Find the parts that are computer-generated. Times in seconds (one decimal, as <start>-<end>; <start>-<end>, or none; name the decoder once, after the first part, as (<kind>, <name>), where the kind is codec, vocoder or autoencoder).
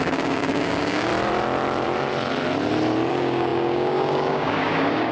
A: 0.0-1.1 (codec, DAC); 3.1-5.1